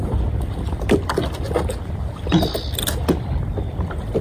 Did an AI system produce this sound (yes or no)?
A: no